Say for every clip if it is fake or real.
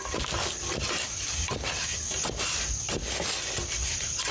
real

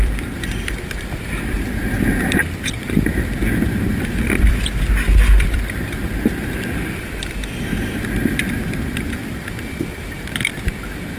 fake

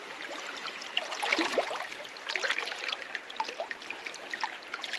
fake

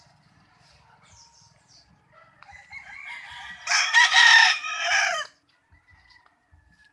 fake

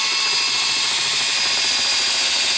real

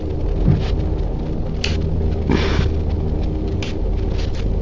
real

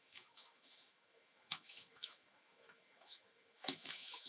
fake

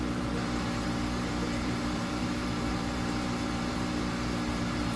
fake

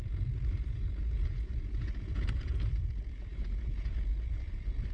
fake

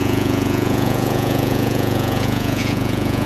fake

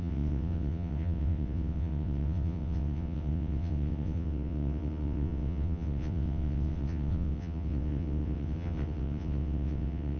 fake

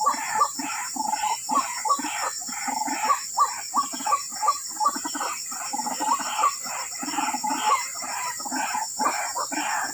fake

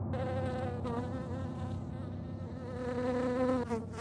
real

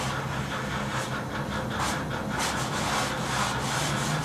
real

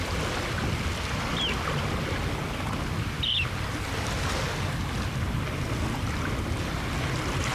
real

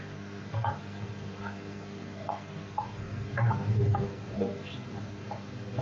fake